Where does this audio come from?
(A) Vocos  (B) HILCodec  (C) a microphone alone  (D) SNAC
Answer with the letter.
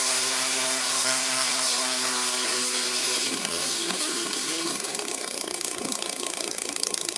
D